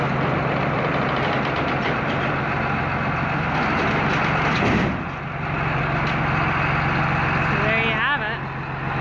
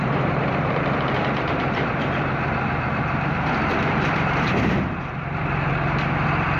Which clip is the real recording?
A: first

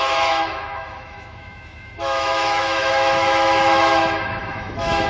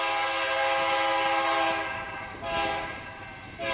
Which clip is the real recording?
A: second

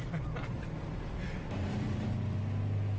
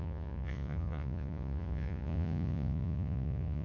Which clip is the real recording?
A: first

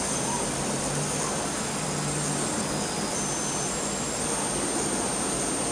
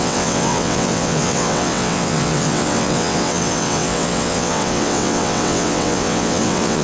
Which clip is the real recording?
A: first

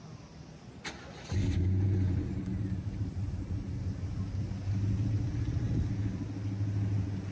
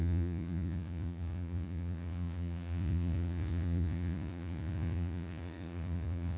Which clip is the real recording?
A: first